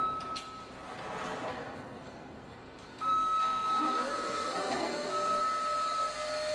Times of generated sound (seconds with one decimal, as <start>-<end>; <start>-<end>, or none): 1.5-5.4